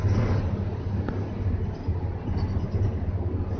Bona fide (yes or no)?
yes